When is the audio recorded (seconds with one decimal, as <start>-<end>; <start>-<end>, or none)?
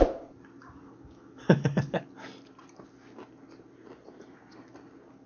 0.0-0.6; 2.0-5.3